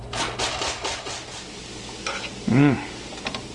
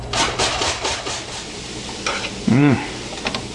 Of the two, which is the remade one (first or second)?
second